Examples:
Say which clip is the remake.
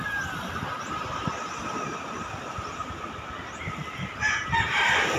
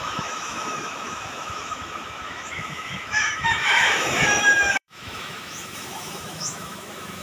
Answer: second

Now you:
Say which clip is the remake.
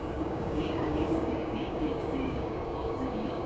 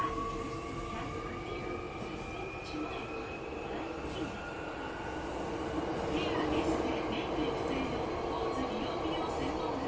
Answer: first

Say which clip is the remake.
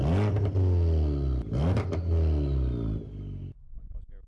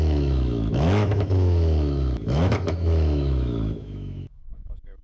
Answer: second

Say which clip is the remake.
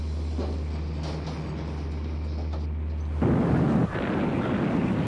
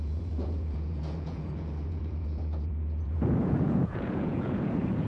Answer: second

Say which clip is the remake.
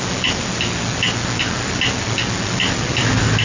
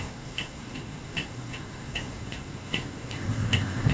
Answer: second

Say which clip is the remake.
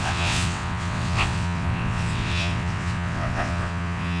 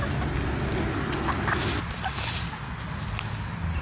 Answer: first